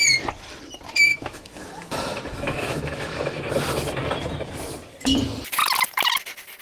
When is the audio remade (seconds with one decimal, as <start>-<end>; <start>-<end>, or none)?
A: 1.1-3.5